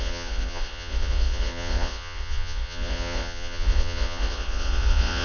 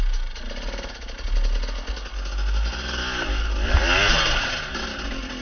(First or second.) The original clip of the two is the second